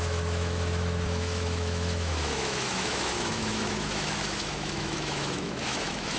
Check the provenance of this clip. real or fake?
fake